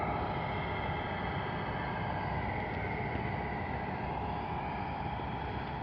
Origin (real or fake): real